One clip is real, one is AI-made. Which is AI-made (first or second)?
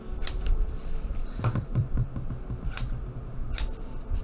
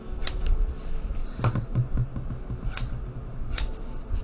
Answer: first